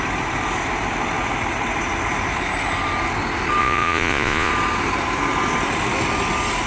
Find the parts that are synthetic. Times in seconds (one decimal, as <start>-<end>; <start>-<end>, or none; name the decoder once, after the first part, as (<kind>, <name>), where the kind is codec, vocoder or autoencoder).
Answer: 3.6-4.5 (vocoder, Vocos)